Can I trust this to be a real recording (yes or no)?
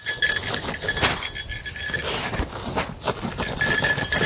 yes